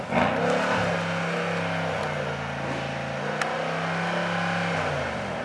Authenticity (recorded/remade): recorded